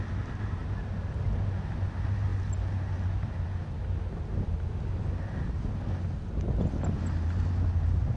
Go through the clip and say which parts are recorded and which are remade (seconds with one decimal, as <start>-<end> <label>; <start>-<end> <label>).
0.0-8.2 recorded